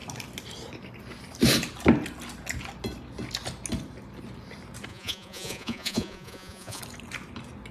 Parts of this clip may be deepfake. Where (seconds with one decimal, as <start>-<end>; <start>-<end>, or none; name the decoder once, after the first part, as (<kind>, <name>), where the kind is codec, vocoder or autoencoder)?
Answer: 4.9-6.8 (vocoder, Vocos)